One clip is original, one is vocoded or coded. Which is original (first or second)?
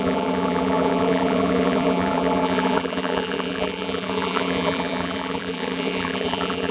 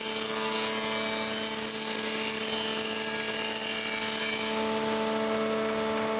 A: second